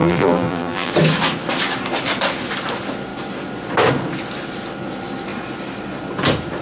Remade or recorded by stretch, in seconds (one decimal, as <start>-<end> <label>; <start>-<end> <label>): 0.0-0.9 remade; 0.9-6.6 recorded